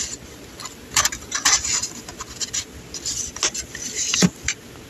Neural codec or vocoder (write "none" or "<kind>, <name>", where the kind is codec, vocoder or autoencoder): none